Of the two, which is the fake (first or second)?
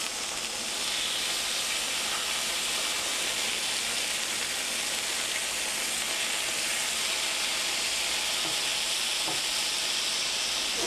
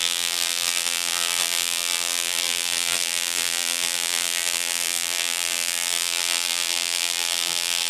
second